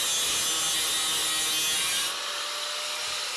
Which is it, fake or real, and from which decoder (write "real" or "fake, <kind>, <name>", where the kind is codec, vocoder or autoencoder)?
real